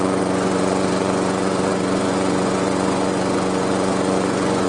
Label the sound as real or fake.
fake